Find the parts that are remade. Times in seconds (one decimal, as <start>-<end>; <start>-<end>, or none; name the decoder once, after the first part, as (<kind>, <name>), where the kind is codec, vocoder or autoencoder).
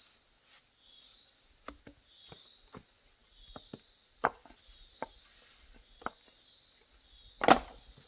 none